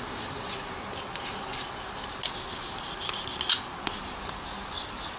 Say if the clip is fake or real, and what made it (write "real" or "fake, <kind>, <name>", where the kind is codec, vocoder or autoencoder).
real